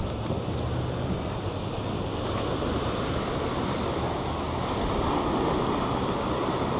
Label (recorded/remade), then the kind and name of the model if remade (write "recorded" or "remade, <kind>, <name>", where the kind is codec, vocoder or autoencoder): recorded